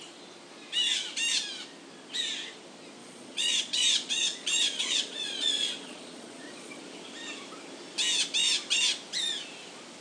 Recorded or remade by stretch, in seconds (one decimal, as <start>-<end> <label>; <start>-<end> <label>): 0.0-3.0 recorded; 3.0-6.8 remade; 6.8-10.0 recorded